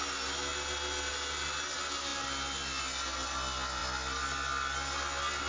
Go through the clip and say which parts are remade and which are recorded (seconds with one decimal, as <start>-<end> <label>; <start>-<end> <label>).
0.0-5.5 recorded